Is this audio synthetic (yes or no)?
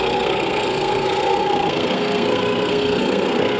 yes